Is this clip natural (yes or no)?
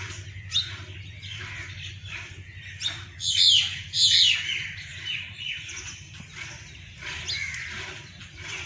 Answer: yes